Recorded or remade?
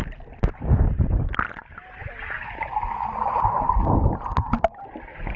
recorded